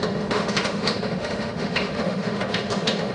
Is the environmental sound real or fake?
fake